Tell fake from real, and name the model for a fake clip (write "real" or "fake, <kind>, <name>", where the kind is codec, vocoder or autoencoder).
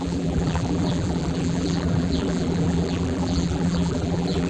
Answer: fake, vocoder, BigVGAN v2